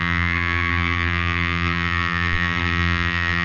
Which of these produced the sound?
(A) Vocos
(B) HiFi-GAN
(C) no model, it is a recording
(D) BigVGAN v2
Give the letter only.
D